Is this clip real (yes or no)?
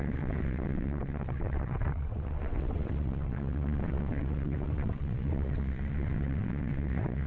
no